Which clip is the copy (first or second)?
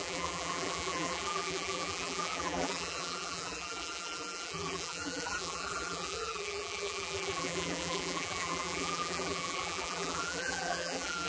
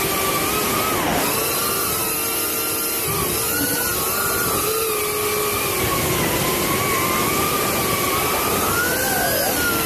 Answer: first